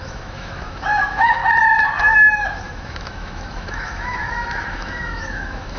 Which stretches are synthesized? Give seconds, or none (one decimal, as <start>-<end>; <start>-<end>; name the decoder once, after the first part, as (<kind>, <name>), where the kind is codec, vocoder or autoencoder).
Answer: 0.0-1.4 (autoencoder, DAC-VAE); 2.0-5.8